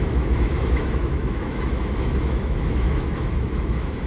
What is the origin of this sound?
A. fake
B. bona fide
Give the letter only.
A